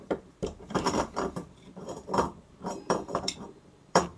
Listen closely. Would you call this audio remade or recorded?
remade